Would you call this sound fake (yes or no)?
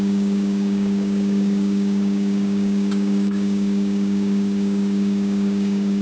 yes